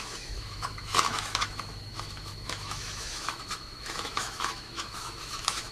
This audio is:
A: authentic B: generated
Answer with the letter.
B